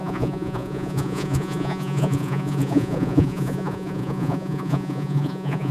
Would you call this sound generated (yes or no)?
yes